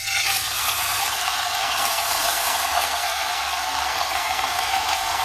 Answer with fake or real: fake